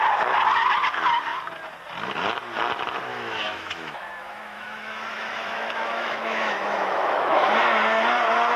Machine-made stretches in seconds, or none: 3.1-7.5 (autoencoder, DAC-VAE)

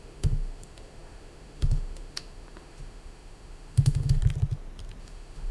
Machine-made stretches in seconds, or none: 0.0-4.2 (autoencoder, DAC-VAE); 5.0-5.5